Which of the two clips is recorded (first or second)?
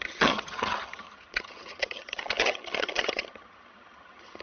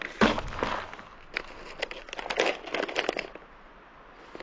second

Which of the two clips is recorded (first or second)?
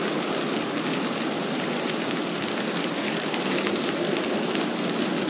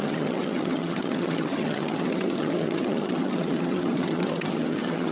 first